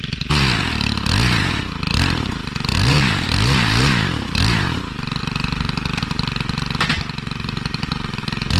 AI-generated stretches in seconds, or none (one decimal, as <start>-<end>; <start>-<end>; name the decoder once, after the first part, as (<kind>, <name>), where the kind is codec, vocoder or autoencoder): 2.7-4.8 (vocoder, BigVGAN v2)